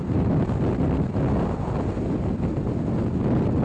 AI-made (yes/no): no